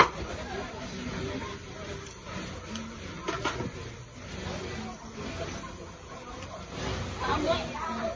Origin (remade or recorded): recorded